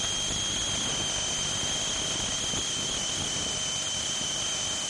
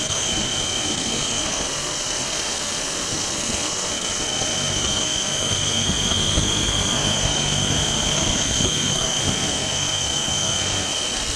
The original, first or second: first